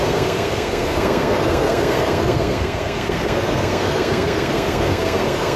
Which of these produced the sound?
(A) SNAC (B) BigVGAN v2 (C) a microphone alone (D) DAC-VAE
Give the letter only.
A